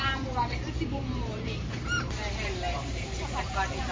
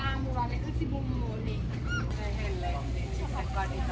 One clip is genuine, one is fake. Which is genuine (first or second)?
second